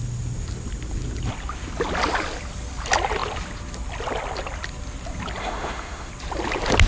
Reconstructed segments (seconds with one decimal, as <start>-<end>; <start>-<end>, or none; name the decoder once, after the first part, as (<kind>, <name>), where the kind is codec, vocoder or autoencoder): 5.4-6.1 (autoencoder, DAC-VAE)